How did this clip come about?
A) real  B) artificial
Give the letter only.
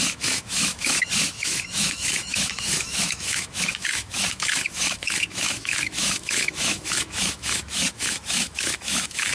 B